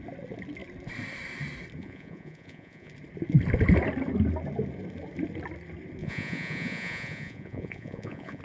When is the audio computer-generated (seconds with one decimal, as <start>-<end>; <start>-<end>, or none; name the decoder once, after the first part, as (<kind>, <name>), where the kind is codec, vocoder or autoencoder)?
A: 1.8-2.9 (vocoder, Vocos); 6.0-8.4